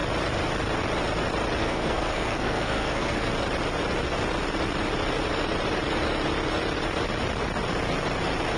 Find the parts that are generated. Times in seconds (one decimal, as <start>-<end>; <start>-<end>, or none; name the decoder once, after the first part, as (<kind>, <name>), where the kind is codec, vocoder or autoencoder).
1.6-3.3 (codec, SNAC)